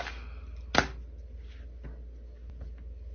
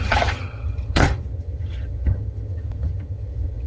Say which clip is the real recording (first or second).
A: first